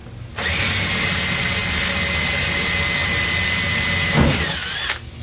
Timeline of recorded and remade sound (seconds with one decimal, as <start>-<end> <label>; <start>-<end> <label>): 0.0-5.2 recorded